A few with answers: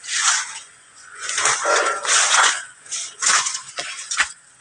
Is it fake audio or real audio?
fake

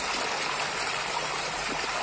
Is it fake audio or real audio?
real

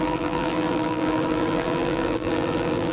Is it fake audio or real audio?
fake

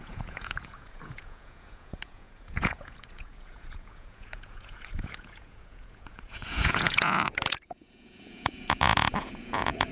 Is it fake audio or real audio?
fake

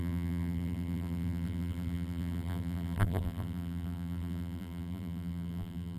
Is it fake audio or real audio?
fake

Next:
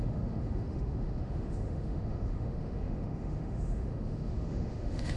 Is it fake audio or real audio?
fake